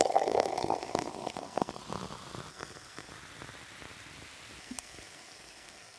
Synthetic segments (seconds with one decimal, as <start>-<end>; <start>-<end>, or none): 0.0-1.8; 2.5-3.1; 4.6-6.0